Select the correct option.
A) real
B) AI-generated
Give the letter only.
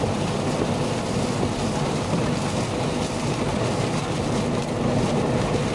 A